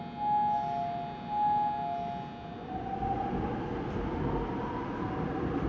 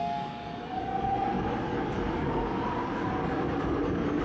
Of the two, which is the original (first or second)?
first